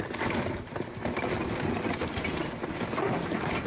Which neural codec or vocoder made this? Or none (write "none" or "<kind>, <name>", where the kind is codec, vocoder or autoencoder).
none